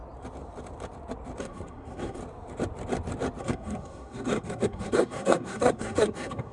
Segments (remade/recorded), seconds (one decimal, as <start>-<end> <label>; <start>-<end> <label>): 0.0-1.4 recorded; 1.4-2.2 remade; 2.2-3.4 recorded; 3.4-6.5 remade